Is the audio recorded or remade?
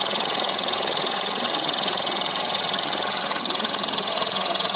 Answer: remade